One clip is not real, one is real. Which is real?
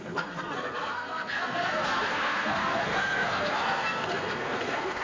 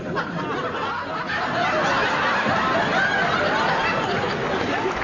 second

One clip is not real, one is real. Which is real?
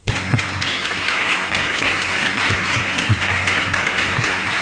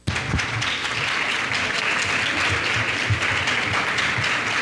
second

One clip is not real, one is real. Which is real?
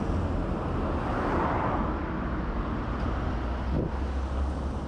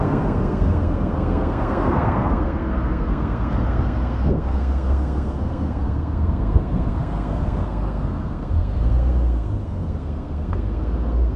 first